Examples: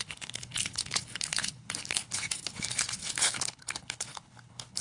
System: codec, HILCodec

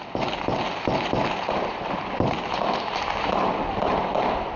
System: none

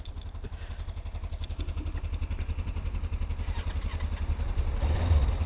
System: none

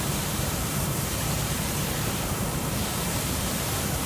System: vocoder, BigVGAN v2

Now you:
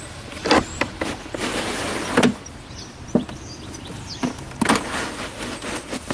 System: none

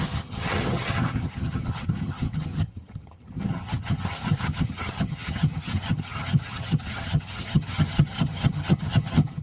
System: vocoder, HiFi-GAN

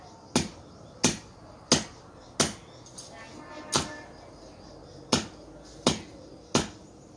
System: none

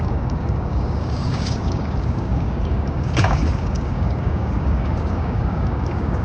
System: codec, DAC